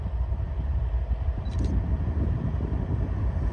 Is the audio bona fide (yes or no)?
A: yes